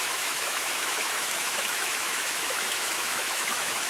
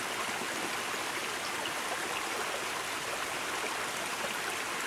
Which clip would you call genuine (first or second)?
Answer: second